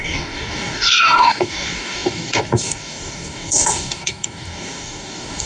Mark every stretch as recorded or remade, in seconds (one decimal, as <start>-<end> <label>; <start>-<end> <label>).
0.0-5.5 remade